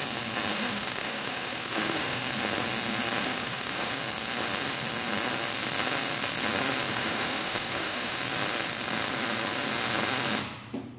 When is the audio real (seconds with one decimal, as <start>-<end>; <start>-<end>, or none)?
0.0-0.5; 2.2-3.2; 3.9-6.9; 8.2-11.0